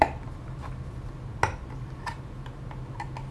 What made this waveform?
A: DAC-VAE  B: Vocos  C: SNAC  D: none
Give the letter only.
D